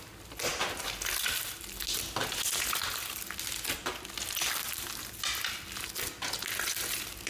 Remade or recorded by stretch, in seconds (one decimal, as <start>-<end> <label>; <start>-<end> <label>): 0.0-7.3 recorded